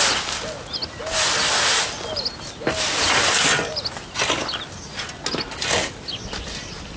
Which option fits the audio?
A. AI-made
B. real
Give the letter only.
B